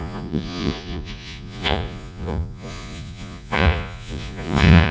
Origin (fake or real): fake